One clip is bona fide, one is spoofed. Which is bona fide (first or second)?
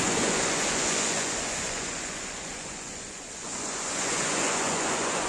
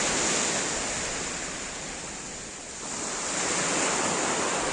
second